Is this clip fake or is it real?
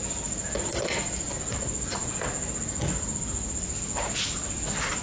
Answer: real